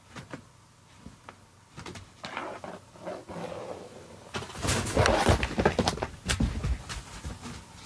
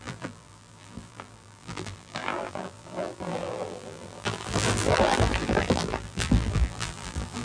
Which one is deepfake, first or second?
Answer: second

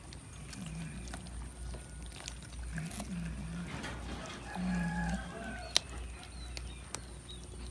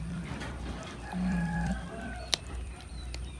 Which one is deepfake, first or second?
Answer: second